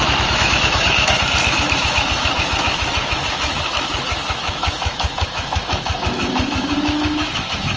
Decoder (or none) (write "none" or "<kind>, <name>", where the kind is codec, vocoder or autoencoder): autoencoder, DAC-VAE